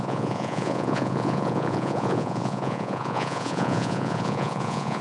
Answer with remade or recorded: remade